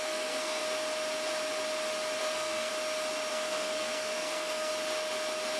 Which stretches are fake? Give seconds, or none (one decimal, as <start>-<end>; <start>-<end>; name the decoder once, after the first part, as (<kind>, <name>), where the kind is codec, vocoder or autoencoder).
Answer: 0.0-0.6 (codec, SNAC); 2.2-2.7; 3.3-4.7